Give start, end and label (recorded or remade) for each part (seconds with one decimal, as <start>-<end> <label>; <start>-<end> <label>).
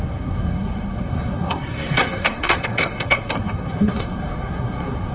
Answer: 0.0-5.1 remade